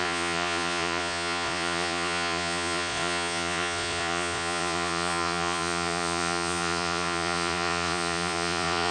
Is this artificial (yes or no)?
yes